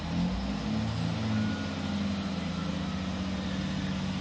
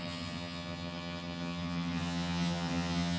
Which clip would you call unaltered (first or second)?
first